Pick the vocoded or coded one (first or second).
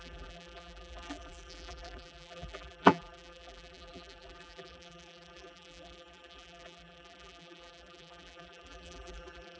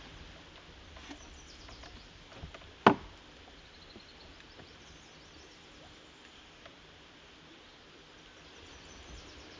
first